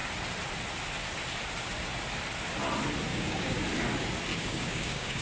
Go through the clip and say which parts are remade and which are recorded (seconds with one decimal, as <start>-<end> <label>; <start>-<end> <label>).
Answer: 0.0-3.1 recorded; 3.1-3.6 remade; 3.6-4.3 recorded; 4.3-5.2 remade